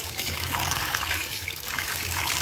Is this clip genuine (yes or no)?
no